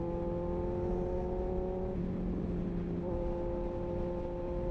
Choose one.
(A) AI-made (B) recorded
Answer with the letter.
B